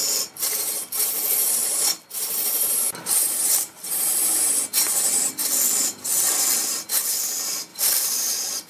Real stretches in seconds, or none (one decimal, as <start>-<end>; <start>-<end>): 0.0-7.7